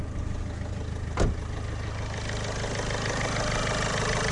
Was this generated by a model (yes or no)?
no